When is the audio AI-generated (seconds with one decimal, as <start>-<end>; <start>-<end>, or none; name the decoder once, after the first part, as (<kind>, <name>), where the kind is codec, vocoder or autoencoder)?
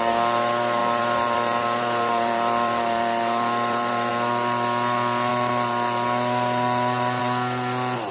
0.8-4.1 (vocoder, BigVGAN v2)